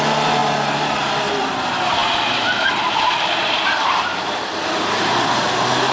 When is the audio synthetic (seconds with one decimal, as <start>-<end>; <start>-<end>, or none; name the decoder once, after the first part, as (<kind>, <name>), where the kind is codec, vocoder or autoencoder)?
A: 0.0-0.4 (vocoder, BigVGAN v2); 1.0-5.9